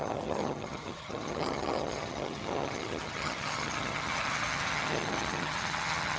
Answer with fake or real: fake